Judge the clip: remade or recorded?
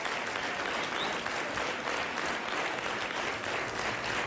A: recorded